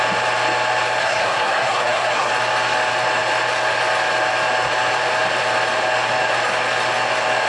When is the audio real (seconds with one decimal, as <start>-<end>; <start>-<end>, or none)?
0.0-1.0; 2.3-7.5